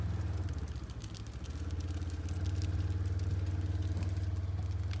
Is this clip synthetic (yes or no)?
no